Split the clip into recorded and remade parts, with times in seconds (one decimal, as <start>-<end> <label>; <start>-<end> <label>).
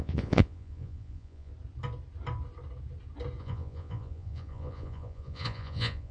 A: 0.0-1.5 remade; 1.5-3.4 recorded; 3.4-6.1 remade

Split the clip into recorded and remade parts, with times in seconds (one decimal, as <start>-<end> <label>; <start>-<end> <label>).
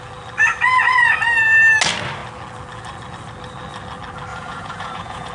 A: 0.0-4.3 recorded; 4.3-5.3 remade